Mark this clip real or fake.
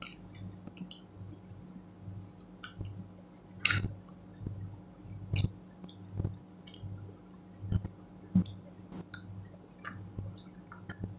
real